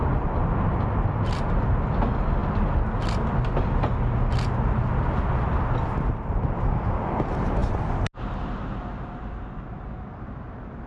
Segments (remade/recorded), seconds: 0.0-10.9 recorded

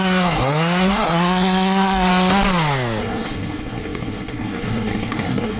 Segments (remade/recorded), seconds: 0.0-2.1 remade; 2.1-3.0 recorded; 3.0-5.6 remade